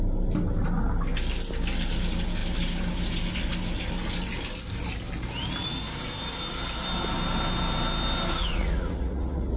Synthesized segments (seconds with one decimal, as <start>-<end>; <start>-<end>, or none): 8.4-9.6